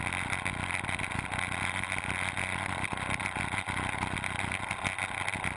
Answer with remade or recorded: recorded